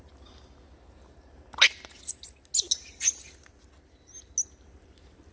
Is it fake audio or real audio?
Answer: real